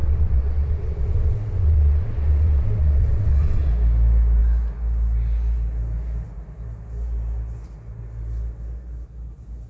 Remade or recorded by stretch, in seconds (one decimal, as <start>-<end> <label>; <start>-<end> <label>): 0.0-3.7 remade; 3.7-9.7 recorded